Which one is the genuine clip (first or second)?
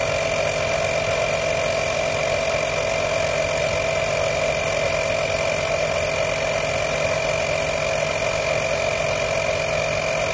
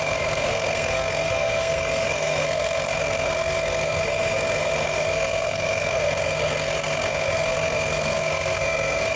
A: first